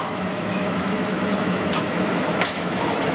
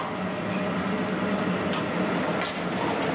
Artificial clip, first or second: first